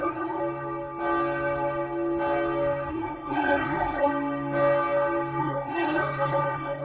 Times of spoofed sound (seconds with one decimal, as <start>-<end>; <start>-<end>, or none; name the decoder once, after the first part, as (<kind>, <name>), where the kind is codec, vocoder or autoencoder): 0.0-0.4 (codec, SNAC); 2.9-4.1; 5.4-6.8